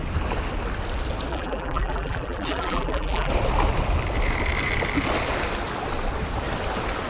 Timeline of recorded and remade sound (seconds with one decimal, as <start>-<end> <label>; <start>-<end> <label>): 0.0-1.3 recorded; 1.3-3.3 remade; 3.3-7.1 recorded